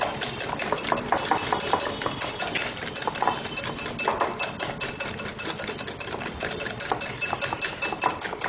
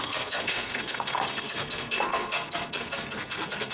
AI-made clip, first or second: second